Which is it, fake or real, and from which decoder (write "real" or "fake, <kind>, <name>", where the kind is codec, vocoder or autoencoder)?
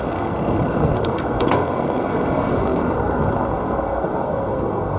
fake, codec, SNAC